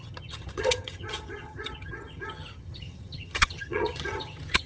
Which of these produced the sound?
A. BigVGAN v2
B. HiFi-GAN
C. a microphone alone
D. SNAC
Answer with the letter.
B